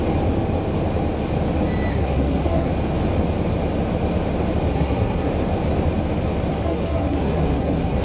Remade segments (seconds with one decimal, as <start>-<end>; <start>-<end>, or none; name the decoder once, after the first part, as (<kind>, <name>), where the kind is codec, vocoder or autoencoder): 1.9-2.7 (codec, SNAC); 4.7-5.3; 6.5-8.0